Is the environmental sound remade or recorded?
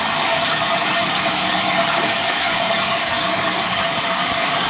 remade